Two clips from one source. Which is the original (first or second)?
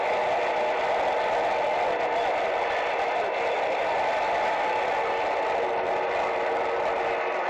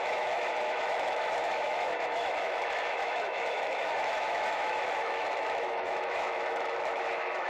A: first